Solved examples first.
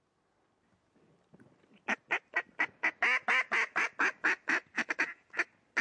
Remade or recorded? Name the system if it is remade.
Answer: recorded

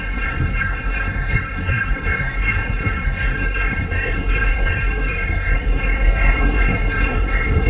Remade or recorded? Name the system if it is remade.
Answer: remade, codec, SNAC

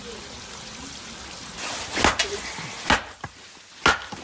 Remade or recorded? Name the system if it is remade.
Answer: recorded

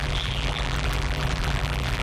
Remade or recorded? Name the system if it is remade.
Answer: remade, vocoder, BigVGAN v2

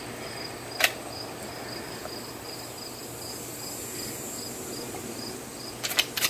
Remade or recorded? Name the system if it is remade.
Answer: remade, vocoder, BigVGAN v2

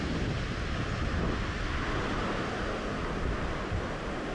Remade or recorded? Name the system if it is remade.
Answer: recorded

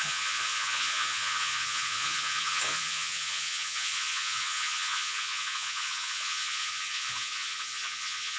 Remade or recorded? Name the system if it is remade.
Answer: remade, vocoder, Vocos